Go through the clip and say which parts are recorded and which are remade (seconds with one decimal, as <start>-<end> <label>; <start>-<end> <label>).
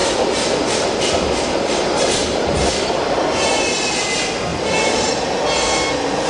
0.0-3.5 remade; 3.5-4.5 recorded; 4.5-5.3 remade; 5.3-6.3 recorded